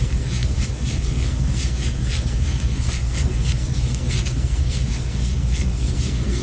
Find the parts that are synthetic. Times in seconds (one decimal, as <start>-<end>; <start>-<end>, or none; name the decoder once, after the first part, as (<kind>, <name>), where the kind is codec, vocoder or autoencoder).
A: 0.0-6.4 (codec, SNAC)